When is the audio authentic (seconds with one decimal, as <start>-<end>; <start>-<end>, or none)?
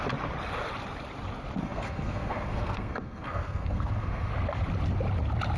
0.0-1.6; 4.3-5.6